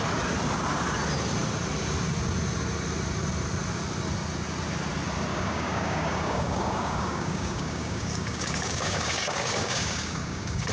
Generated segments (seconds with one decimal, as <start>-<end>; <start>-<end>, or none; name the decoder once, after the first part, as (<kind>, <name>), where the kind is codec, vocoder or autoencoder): 5.3-10.7 (codec, DAC)